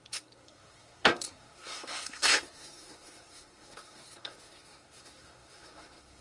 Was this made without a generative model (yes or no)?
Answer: no